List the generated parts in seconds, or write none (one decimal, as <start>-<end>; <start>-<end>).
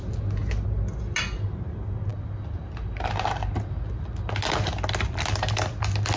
none